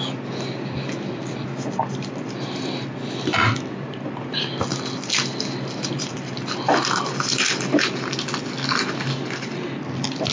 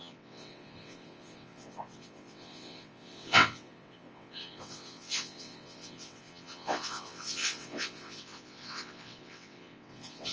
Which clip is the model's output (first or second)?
second